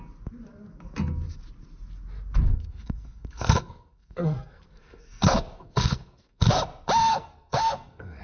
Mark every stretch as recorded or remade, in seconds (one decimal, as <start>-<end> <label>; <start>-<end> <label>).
0.0-2.5 recorded; 2.5-6.6 remade; 6.6-7.1 recorded; 7.1-8.2 remade